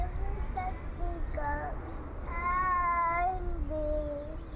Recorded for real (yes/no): yes